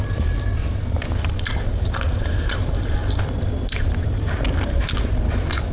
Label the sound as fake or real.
real